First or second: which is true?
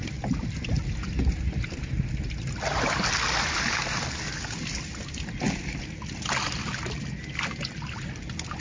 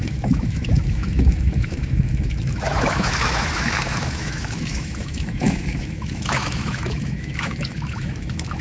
first